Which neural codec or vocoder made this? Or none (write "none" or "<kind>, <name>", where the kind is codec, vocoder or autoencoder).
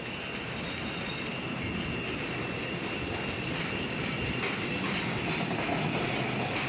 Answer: none